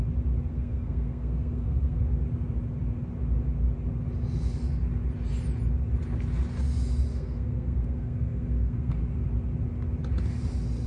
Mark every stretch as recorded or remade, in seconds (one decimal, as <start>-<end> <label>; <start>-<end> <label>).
0.0-0.5 recorded; 0.5-2.0 remade; 2.0-7.1 recorded; 7.1-9.0 remade; 9.0-10.9 recorded